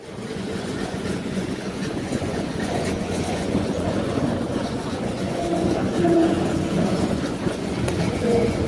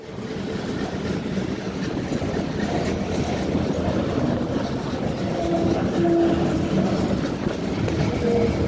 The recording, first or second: second